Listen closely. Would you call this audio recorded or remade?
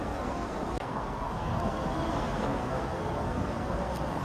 remade